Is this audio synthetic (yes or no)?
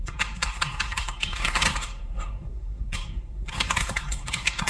yes